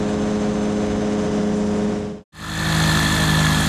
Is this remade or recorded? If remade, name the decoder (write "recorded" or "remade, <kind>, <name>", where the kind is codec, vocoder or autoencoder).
recorded